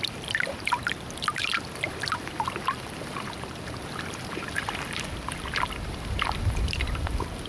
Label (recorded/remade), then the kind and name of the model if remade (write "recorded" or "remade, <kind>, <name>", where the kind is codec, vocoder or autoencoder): remade, vocoder, BigVGAN v2